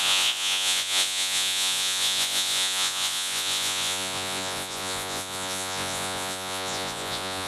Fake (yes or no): yes